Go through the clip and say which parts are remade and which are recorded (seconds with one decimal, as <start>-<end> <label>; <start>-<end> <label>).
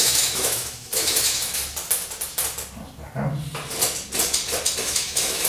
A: 0.0-1.6 remade; 1.6-4.8 recorded; 4.8-5.5 remade